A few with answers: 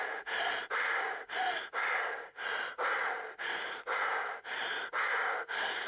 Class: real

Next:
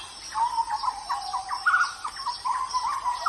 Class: real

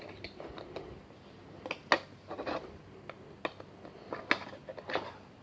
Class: real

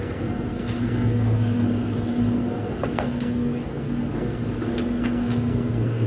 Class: fake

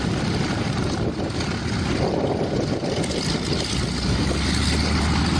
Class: real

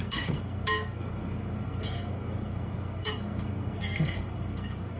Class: fake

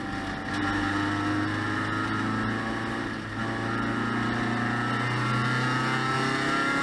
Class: real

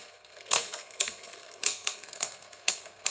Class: fake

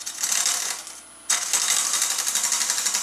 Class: real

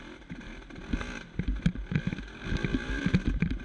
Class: real